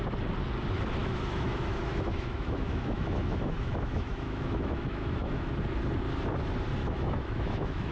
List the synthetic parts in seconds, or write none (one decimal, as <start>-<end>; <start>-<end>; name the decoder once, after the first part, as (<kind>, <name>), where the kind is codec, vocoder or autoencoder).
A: 1.0-5.5 (autoencoder, DAC-VAE); 6.8-7.9